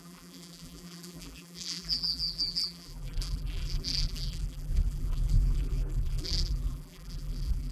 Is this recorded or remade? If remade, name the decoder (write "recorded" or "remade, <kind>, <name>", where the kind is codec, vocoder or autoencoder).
remade, vocoder, BigVGAN v2